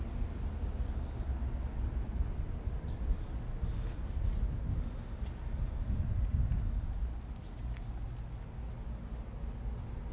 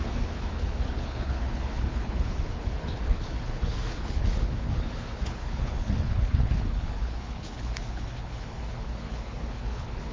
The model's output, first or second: second